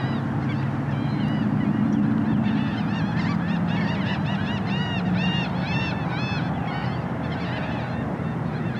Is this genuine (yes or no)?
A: yes